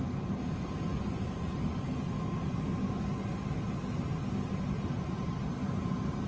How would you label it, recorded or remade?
recorded